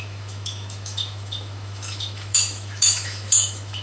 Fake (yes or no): yes